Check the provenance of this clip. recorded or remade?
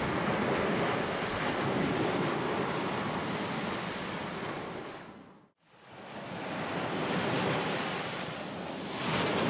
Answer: recorded